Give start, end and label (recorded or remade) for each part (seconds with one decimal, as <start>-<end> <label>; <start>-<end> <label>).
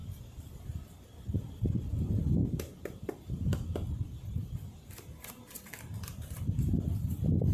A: 0.0-0.7 remade; 0.7-2.4 recorded; 2.4-3.1 remade; 3.1-6.1 recorded; 6.1-6.8 remade; 6.8-7.5 recorded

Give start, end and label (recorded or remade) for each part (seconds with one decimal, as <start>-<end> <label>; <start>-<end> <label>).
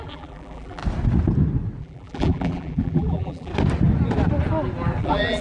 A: 0.0-0.8 remade; 0.8-1.8 recorded; 1.8-3.5 remade; 3.5-5.0 recorded; 5.0-5.4 remade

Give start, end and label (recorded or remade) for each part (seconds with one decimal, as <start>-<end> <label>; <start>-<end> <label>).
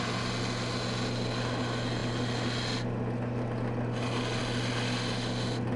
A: 0.0-5.8 recorded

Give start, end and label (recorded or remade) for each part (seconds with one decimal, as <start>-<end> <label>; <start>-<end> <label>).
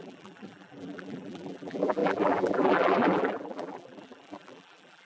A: 0.0-5.0 remade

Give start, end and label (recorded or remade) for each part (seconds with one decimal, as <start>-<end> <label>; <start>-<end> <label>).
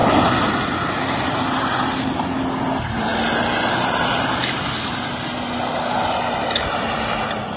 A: 0.0-7.6 recorded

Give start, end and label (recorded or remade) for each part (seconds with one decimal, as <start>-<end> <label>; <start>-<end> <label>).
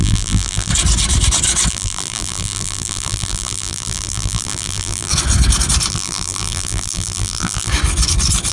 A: 0.0-0.7 remade; 0.7-1.7 recorded; 1.7-5.1 remade; 5.1-5.9 recorded; 5.9-7.7 remade; 7.7-8.5 recorded